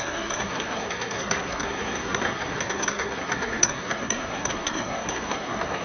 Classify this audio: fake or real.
fake